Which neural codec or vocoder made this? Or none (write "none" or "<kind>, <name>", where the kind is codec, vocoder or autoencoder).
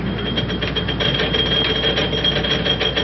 none